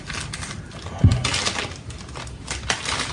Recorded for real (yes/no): yes